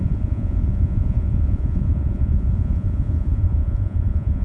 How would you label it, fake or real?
fake